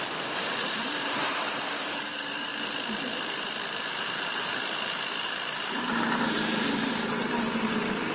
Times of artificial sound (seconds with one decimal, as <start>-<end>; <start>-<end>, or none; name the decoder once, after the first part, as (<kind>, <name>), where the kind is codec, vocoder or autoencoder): 0.0-2.5 (vocoder, BigVGAN v2); 5.6-8.1

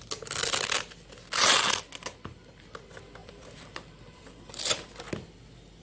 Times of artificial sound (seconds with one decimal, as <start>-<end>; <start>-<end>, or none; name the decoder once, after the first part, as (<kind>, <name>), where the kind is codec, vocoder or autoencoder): 3.2-5.0 (vocoder, BigVGAN v2)

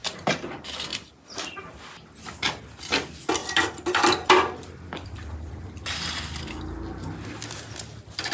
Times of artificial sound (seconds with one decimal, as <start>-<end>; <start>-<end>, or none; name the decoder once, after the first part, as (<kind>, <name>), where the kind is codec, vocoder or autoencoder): 0.0-0.5 (vocoder, BigVGAN v2); 0.9-1.8